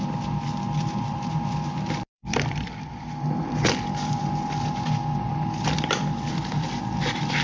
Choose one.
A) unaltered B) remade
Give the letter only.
B